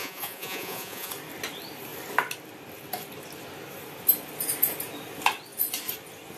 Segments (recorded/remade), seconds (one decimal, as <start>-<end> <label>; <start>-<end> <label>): 0.0-1.1 remade; 1.1-6.4 recorded